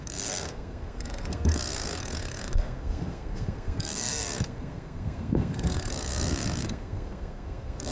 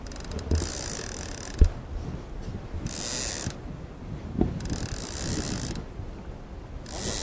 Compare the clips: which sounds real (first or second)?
second